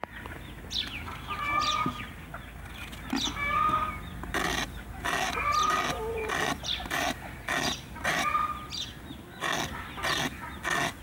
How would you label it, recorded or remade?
recorded